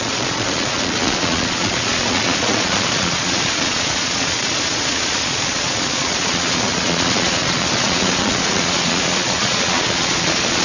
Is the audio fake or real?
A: fake